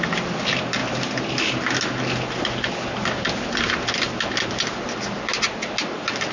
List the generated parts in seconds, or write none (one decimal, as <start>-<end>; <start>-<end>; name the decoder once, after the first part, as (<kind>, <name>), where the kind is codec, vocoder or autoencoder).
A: none